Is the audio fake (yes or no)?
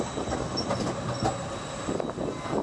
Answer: no